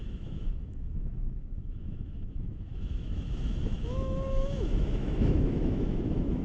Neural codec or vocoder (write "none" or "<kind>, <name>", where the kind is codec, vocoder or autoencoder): autoencoder, DAC-VAE